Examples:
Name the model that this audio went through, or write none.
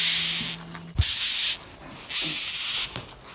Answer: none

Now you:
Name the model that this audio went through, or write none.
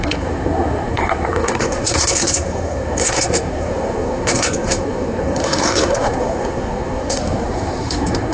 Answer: codec, SNAC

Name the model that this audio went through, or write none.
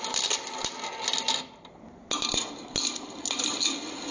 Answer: none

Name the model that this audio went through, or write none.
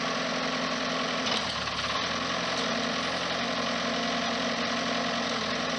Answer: none